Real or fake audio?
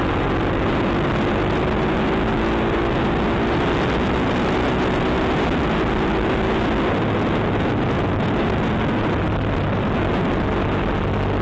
real